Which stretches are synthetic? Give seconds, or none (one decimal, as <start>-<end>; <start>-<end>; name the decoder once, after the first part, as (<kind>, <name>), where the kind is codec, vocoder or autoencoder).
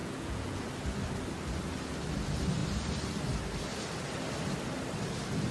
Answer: 0.0-0.7 (vocoder, Vocos)